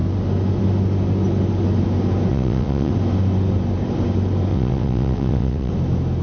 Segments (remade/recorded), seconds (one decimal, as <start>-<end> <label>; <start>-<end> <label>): 0.0-2.3 recorded; 2.3-2.9 remade; 2.9-4.5 recorded; 4.5-5.7 remade; 5.7-6.2 recorded